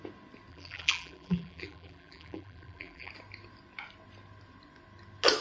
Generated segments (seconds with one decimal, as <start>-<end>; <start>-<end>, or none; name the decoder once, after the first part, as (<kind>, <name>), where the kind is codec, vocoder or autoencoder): 0.5-3.1 (vocoder, BigVGAN v2)